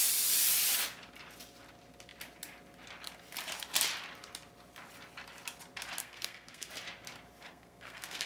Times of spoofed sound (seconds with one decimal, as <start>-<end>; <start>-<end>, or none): 6.0-6.7; 7.5-8.3

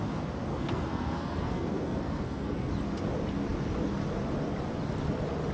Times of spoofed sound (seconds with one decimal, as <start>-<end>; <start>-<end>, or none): 0.5-2.7

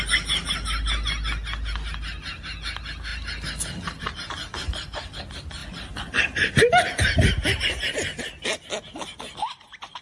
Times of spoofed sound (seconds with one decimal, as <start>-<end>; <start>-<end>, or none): 5.6-6.7

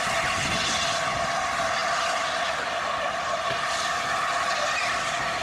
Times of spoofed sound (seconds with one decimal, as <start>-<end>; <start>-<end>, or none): none